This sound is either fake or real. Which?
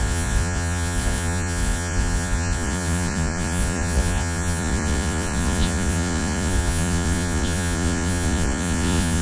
fake